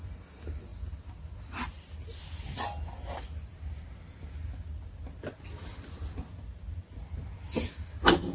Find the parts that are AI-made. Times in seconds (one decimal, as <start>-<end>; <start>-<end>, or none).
none